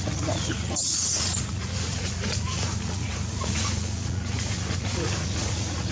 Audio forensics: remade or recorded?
remade